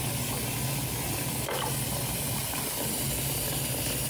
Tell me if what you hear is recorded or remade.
recorded